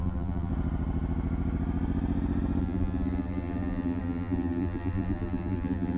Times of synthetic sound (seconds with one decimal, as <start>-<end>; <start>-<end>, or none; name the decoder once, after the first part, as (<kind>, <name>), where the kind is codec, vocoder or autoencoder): 0.0-0.5 (vocoder, BigVGAN v2); 2.6-6.0

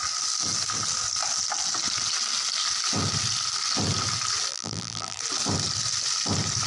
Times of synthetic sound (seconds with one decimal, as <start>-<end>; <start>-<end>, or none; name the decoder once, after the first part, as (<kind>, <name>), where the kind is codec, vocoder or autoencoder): 4.5-5.2 (vocoder, BigVGAN v2)

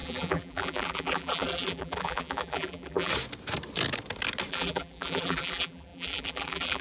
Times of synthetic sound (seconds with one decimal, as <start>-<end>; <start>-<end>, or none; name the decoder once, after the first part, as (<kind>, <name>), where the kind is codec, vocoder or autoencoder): 0.0-3.1 (vocoder, BigVGAN v2); 4.5-6.8

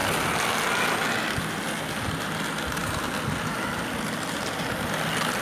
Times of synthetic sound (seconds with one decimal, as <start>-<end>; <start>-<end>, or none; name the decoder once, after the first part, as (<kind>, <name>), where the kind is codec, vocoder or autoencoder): none

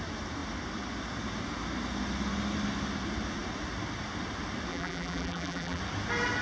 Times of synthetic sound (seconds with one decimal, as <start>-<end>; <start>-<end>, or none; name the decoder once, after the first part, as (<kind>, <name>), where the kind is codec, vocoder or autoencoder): 4.7-5.8 (vocoder, BigVGAN v2)